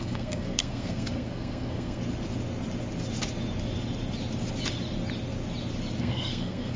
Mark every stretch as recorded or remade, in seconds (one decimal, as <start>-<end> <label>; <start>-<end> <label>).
0.0-2.0 remade; 2.0-6.0 recorded; 6.0-6.8 remade

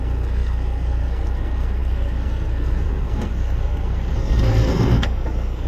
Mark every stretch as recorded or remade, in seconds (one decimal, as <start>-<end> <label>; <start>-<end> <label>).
0.0-5.7 remade